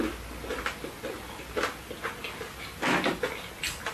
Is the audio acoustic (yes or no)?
yes